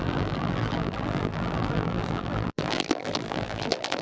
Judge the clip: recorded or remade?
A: remade